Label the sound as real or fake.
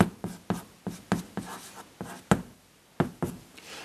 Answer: real